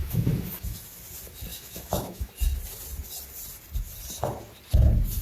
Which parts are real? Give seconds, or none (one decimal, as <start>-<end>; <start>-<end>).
1.0-1.5; 2.3-5.2